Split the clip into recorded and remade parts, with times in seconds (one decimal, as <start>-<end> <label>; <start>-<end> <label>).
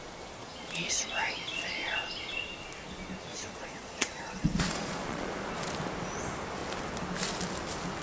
0.0-0.4 recorded; 0.4-1.1 remade; 1.1-3.3 recorded; 3.3-5.5 remade; 5.5-8.0 recorded